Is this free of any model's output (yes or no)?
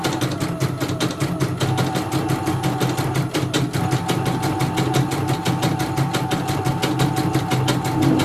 yes